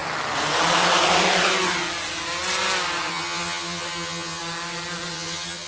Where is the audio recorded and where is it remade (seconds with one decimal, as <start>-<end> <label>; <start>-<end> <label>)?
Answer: 0.0-3.1 recorded; 3.1-4.4 remade; 4.4-5.1 recorded; 5.1-5.7 remade